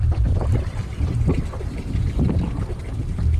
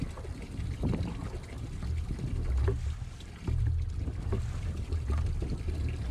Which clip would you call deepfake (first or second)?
first